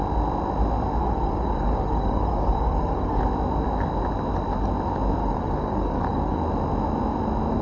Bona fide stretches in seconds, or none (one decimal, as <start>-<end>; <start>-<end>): 0.0-1.0; 3.2-5.2; 6.4-7.6